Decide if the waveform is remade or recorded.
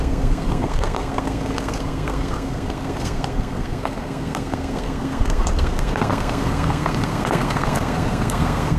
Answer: remade